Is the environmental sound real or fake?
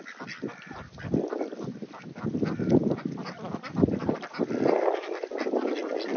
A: real